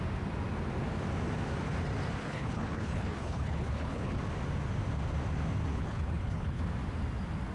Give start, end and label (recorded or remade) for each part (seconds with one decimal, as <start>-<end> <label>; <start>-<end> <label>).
0.0-2.2 recorded; 2.2-4.2 remade; 4.2-5.7 recorded; 5.7-6.6 remade; 6.6-7.5 recorded